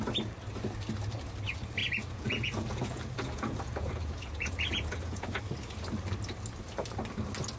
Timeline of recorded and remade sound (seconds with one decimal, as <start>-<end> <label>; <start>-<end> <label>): 0.0-1.8 recorded; 1.8-5.4 remade; 5.4-7.6 recorded